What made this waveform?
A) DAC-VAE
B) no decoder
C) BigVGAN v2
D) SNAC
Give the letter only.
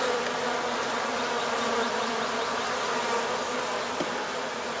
B